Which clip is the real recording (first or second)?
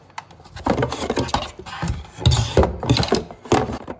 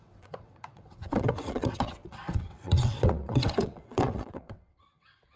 first